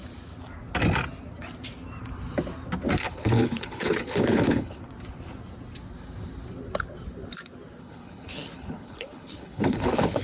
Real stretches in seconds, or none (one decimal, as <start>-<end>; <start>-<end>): 0.0-3.0; 4.8-7.8